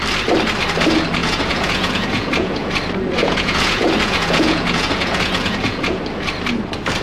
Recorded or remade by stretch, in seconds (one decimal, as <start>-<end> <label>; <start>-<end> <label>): 0.0-1.2 recorded; 1.2-2.7 remade; 2.7-3.2 recorded; 3.2-6.0 remade; 6.0-7.0 recorded